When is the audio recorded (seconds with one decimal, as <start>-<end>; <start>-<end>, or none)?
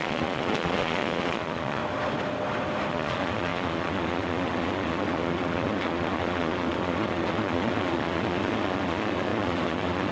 1.8-2.9